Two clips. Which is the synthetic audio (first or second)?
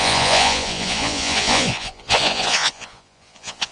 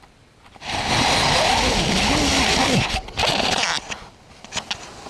first